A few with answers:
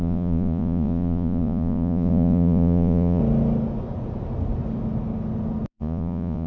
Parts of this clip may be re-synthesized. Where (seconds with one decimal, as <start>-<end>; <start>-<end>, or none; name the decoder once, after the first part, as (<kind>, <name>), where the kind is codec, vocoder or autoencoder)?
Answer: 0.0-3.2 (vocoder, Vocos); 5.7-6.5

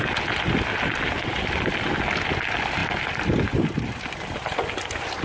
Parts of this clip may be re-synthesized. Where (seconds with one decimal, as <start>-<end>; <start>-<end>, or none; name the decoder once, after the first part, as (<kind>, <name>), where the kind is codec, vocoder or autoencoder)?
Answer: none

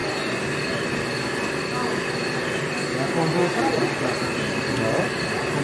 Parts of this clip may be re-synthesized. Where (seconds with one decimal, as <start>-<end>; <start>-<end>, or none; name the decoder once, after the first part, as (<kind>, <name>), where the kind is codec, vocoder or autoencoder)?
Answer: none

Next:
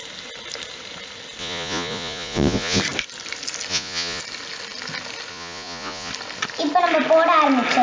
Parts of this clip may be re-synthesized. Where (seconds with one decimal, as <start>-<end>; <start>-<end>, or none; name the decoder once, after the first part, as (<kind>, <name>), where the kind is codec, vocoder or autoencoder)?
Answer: 1.4-2.8 (vocoder, Vocos); 3.7-4.2; 5.3-6.1

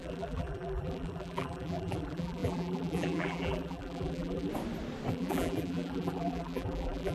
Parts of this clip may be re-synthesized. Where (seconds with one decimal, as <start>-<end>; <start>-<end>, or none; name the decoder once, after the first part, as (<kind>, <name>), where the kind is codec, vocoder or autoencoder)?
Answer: 0.0-4.5 (vocoder, BigVGAN v2); 5.1-7.1